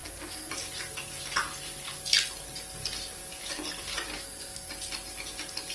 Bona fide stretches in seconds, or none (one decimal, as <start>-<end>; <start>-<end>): 0.5-4.1; 4.7-5.7